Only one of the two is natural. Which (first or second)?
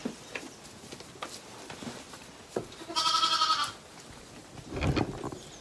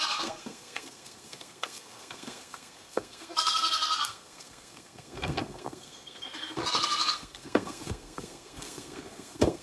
first